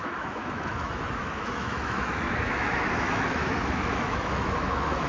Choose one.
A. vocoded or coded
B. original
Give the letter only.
A